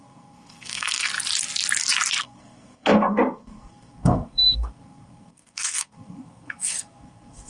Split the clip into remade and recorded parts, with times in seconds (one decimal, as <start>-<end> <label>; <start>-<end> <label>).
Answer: 0.0-1.1 remade; 1.1-2.2 recorded; 2.2-7.5 remade